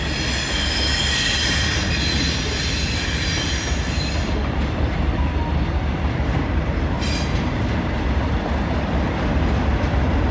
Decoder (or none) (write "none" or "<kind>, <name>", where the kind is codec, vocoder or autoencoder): none